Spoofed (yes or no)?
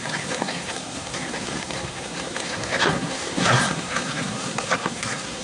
yes